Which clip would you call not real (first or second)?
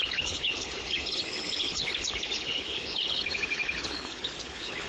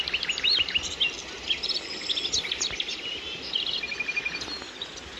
first